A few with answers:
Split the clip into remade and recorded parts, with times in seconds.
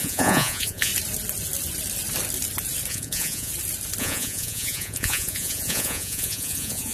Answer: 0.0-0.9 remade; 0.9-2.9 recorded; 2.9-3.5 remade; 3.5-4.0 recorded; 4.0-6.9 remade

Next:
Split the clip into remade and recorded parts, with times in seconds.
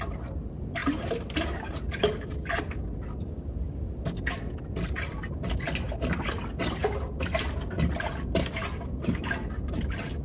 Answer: 0.0-10.2 recorded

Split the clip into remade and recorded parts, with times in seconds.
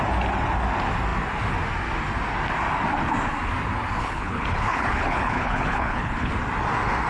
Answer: 0.0-4.0 recorded; 4.0-6.3 remade; 6.3-7.1 recorded